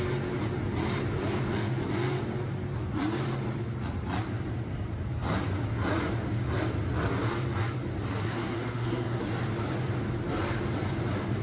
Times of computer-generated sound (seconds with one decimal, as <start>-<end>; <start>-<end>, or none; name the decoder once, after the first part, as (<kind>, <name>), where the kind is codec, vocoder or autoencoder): 8.2-9.2 (codec, SNAC)